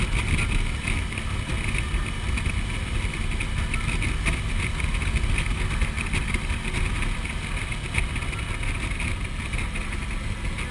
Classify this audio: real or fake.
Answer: real